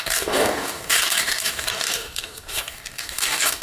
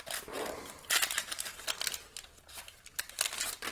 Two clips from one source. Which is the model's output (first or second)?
first